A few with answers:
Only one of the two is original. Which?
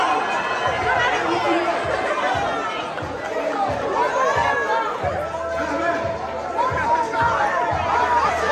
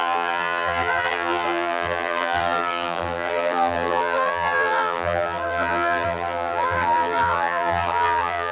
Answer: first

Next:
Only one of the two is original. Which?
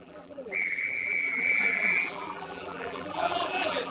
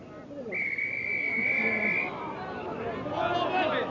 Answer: second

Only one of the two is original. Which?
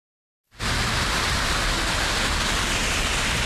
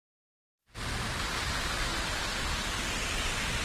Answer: first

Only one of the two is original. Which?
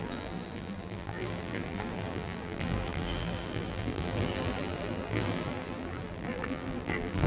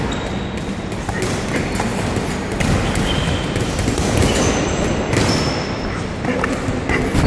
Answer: second